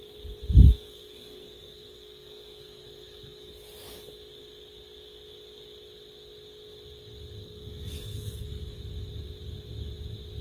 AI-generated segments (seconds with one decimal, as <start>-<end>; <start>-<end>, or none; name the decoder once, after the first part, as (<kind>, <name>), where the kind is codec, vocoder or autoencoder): 0.7-3.5 (codec, SNAC); 7.4-8.8

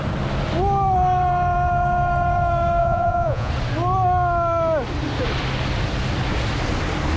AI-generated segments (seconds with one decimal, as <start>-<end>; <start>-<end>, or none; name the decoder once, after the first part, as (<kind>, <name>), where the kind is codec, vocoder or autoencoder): 2.8-3.5 (vocoder, Vocos)

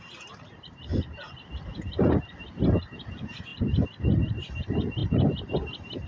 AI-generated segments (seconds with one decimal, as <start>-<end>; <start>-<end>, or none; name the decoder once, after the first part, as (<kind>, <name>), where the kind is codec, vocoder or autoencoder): 0.0-3.5 (vocoder, BigVGAN v2); 4.3-6.1

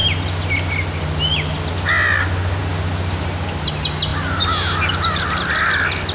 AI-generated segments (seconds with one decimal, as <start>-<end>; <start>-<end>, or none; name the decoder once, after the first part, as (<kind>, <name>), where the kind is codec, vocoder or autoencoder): none

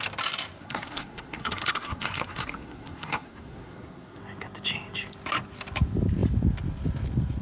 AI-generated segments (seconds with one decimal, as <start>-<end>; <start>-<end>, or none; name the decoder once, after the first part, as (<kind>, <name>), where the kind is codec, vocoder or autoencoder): 0.6-4.2 (codec, SNAC)

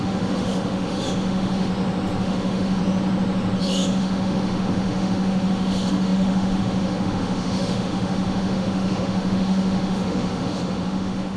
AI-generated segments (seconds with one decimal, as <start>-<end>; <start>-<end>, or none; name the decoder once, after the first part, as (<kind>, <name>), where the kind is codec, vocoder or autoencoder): 0.0-1.7 (autoencoder, DAC-VAE); 2.2-2.8; 3.6-11.4

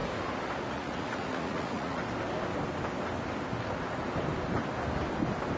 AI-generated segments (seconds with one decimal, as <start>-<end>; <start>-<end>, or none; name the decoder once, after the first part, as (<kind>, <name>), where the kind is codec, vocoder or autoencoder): 0.7-2.0 (vocoder, Vocos)

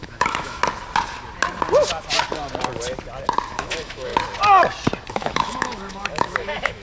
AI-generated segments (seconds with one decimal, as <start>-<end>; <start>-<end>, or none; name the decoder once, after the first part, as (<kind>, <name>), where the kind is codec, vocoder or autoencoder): 0.0-0.6 (autoencoder, DAC-VAE); 3.5-4.1; 5.1-6.8